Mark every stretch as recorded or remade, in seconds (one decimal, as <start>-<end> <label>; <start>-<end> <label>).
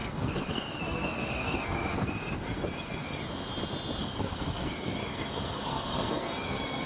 0.0-3.2 remade; 3.2-4.0 recorded; 4.0-6.9 remade